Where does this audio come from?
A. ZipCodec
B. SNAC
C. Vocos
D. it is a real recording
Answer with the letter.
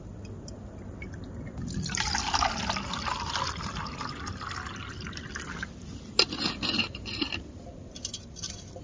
D